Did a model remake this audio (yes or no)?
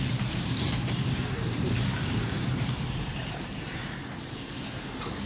yes